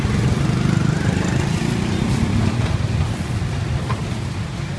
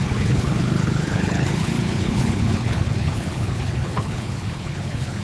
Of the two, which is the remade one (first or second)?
second